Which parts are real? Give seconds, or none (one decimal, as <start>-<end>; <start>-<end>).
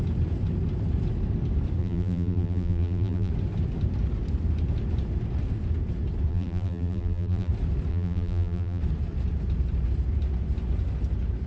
0.0-1.8; 3.3-6.3; 7.5-7.9; 8.8-11.5